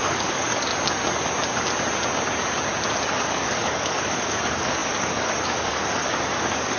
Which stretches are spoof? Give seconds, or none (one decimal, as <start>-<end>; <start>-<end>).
0.0-0.7; 3.1-6.8